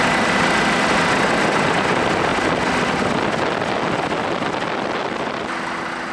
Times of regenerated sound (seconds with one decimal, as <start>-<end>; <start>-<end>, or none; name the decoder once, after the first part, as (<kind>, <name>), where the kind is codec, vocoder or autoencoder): none